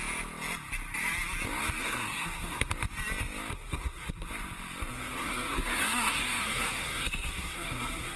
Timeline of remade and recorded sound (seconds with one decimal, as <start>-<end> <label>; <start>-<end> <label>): 0.0-1.8 recorded; 1.8-2.7 remade; 2.7-3.5 recorded; 3.5-4.3 remade; 4.3-4.9 recorded; 4.9-8.2 remade